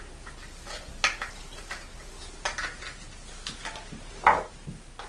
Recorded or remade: recorded